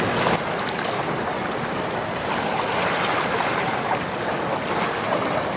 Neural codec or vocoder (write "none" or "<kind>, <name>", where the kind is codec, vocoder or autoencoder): none